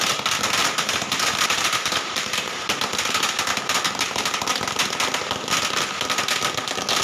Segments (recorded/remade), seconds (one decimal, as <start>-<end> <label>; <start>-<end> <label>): 0.0-0.6 recorded; 0.6-2.6 remade; 2.6-7.0 recorded